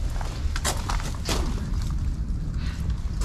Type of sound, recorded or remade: recorded